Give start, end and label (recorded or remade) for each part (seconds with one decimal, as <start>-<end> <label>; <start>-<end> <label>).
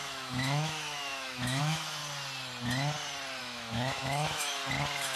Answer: 0.0-2.0 remade; 2.0-3.4 recorded; 3.4-4.6 remade; 4.6-5.2 recorded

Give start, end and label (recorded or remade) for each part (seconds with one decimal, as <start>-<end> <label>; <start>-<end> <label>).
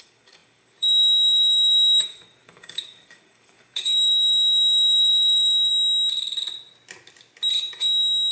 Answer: 0.0-5.7 remade; 5.7-7.8 recorded; 7.8-8.3 remade